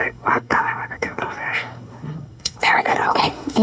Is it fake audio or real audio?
fake